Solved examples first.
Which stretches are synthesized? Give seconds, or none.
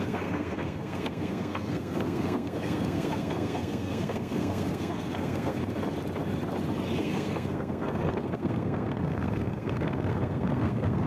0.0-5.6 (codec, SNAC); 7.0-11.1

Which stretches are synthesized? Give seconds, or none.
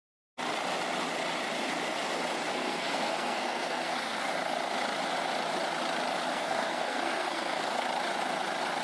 2.5-4.3 (codec, SNAC); 6.3-7.8